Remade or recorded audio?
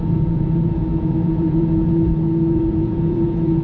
remade